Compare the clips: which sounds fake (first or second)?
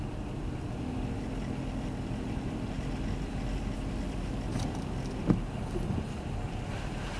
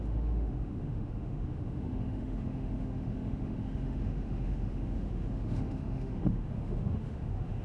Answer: second